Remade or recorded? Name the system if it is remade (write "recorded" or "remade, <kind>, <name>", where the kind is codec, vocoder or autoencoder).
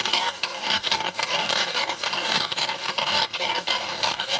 remade, codec, DAC